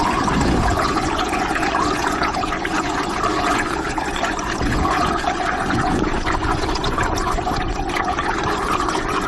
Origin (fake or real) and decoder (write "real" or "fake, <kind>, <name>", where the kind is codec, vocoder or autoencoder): fake, vocoder, Vocos